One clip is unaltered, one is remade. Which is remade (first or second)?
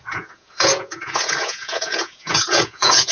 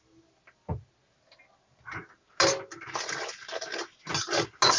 first